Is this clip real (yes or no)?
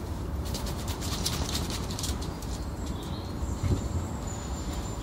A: no